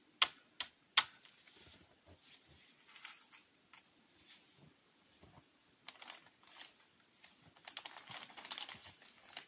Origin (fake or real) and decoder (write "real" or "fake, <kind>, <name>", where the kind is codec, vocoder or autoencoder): real